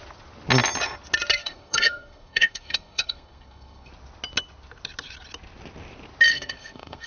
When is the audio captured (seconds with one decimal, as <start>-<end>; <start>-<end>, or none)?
0.0-1.4; 3.9-6.3